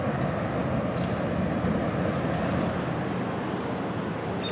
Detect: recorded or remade recorded